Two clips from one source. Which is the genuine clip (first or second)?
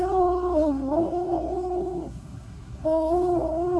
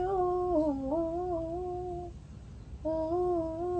second